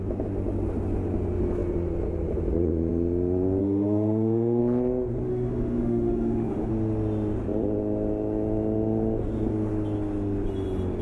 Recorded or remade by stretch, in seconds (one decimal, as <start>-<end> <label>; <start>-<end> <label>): 0.0-3.6 recorded; 3.6-4.6 remade; 4.6-5.3 recorded; 5.3-6.7 remade; 6.7-11.0 recorded